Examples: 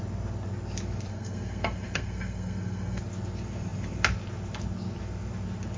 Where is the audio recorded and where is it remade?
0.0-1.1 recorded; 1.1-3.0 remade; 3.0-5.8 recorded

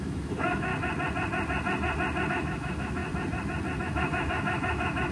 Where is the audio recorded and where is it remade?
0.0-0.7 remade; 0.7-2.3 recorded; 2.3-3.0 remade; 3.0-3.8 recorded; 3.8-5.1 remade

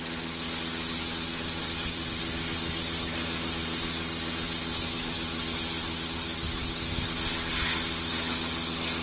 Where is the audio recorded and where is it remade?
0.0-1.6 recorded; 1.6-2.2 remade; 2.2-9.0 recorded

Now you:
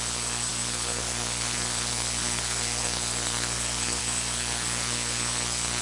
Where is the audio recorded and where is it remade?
0.0-5.8 remade